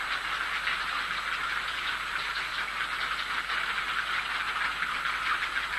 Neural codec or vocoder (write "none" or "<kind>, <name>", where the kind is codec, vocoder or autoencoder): none